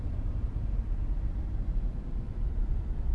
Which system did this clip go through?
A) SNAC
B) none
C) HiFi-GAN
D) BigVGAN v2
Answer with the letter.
D